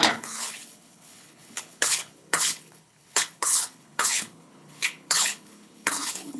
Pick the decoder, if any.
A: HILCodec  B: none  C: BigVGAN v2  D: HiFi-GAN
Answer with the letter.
A